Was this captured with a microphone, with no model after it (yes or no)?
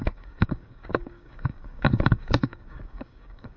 no